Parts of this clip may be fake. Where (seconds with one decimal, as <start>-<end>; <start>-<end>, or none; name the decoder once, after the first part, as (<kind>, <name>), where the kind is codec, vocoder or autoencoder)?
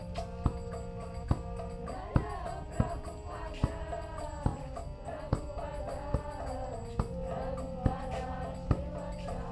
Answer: none